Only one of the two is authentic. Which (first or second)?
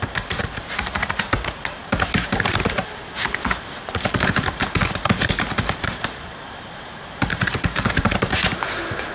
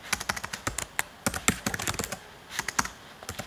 second